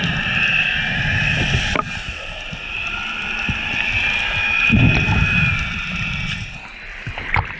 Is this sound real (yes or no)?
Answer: yes